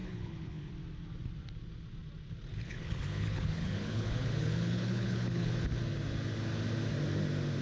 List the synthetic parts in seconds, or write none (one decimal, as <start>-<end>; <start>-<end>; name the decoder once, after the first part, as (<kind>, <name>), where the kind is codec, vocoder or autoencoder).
0.0-0.7 (codec, HILCodec); 2.5-5.5